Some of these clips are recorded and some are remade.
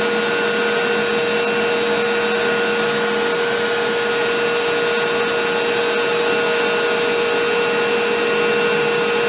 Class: recorded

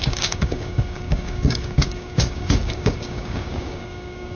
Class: remade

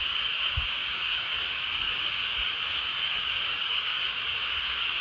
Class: remade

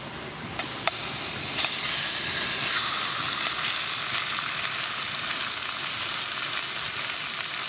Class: recorded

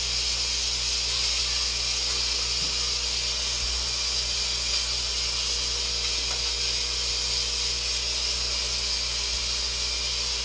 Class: recorded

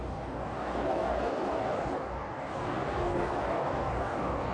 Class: remade